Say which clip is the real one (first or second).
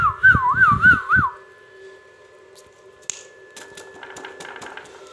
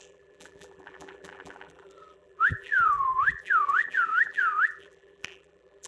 first